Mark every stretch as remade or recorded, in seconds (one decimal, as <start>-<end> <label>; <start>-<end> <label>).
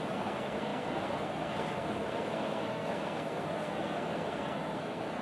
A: 0.0-5.2 remade